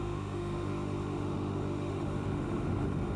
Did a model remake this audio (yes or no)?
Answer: yes